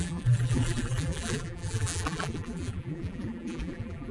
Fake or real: fake